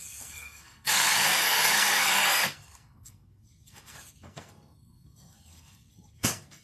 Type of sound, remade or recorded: remade